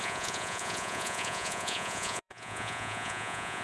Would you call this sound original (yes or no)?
no